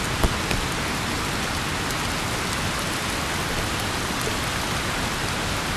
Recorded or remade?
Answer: recorded